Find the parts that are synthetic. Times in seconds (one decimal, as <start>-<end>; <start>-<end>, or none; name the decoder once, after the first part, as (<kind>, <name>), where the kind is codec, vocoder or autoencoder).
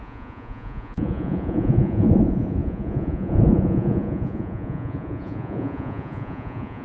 0.0-6.8 (vocoder, Vocos)